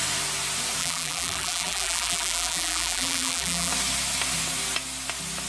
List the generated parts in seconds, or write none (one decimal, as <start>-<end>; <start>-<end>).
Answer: 0.8-3.7